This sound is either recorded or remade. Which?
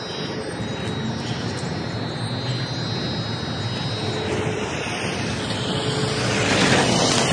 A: recorded